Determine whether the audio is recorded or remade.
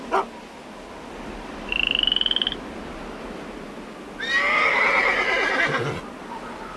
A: recorded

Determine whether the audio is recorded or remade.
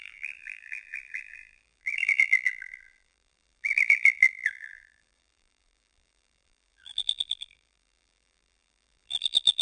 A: remade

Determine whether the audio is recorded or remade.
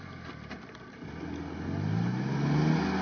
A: recorded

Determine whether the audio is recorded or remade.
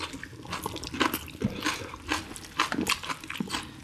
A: recorded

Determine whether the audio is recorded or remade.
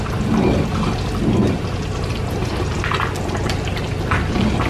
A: recorded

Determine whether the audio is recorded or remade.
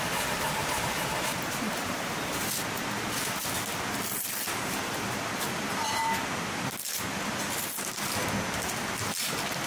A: recorded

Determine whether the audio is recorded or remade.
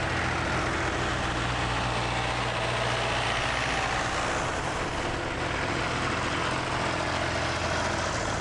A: recorded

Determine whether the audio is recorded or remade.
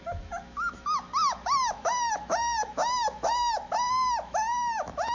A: remade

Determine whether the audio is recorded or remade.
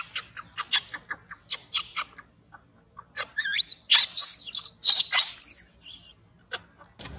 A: recorded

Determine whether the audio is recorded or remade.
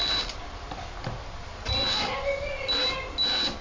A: recorded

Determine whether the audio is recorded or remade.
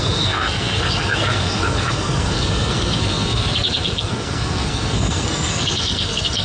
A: remade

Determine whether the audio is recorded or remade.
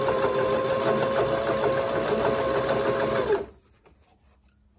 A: recorded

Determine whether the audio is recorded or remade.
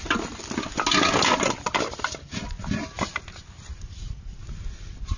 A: recorded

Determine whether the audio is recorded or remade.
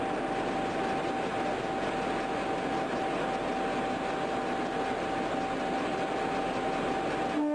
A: recorded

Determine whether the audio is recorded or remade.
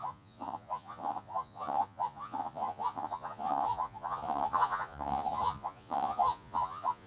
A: remade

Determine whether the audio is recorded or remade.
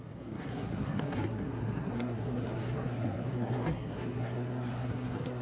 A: remade